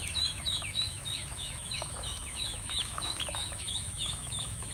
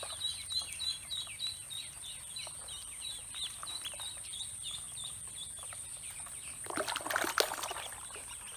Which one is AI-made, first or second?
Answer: first